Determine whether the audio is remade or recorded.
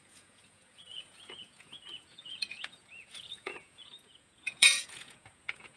remade